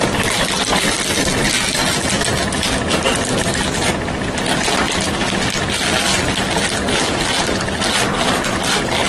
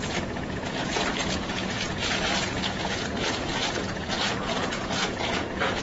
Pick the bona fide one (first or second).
first